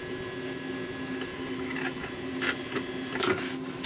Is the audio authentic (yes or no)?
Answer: yes